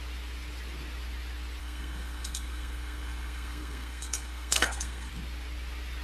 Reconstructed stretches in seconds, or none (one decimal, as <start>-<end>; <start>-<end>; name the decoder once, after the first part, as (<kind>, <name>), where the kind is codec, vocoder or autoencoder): 1.6-5.1 (codec, SNAC)